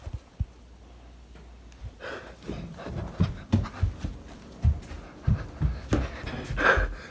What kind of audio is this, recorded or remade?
recorded